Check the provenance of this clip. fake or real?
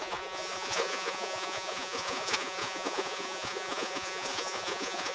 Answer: fake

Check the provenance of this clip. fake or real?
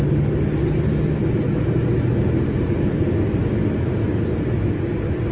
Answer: real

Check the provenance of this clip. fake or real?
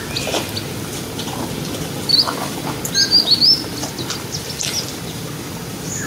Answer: real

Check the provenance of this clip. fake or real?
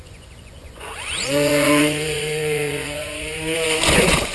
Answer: fake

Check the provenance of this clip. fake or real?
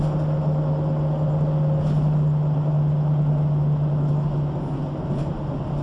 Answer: real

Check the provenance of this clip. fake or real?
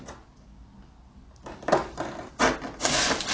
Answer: real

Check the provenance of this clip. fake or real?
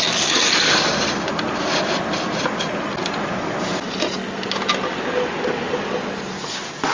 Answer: real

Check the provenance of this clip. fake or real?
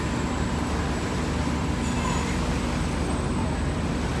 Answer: real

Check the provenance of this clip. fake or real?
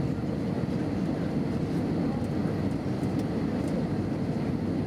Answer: real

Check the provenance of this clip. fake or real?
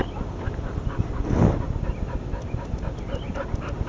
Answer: real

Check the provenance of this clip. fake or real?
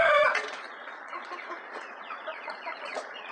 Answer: fake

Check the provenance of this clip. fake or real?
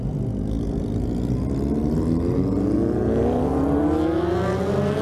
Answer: real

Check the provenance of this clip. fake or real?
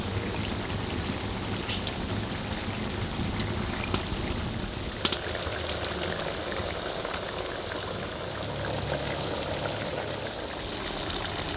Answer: real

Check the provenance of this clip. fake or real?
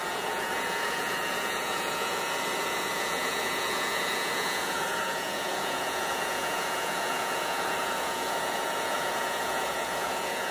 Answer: fake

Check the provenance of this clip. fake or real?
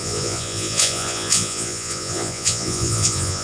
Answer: fake